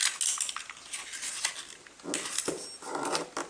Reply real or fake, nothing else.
real